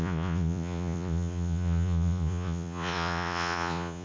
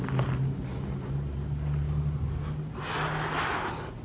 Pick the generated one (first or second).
first